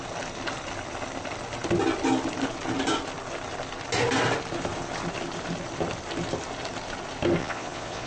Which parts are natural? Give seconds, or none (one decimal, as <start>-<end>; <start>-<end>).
0.0-7.4